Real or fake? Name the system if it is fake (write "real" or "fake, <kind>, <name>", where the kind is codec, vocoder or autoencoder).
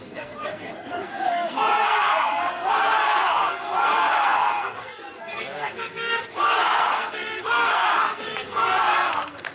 fake, codec, SNAC